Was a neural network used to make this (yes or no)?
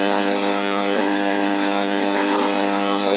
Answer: yes